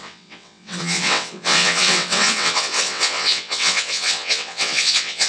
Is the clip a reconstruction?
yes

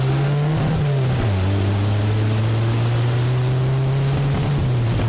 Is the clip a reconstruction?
no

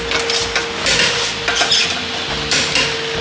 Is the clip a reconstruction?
no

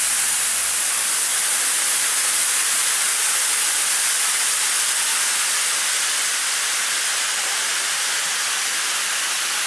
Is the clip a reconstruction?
no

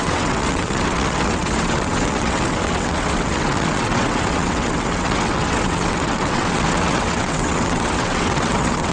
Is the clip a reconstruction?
yes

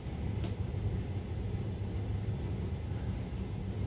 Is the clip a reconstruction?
no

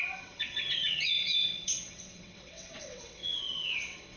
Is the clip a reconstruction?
yes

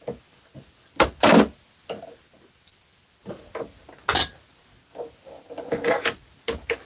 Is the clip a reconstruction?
no